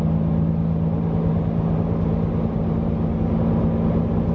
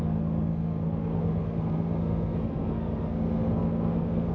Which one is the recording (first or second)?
first